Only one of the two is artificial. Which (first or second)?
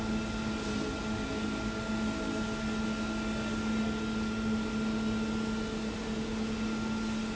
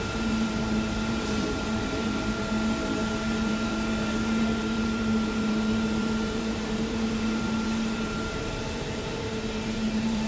second